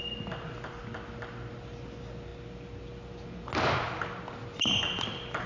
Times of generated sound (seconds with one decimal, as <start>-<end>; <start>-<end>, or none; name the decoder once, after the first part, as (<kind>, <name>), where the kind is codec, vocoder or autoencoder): none